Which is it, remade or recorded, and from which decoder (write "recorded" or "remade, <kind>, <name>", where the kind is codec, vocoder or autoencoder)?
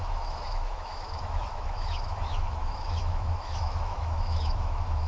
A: remade, autoencoder, DAC-VAE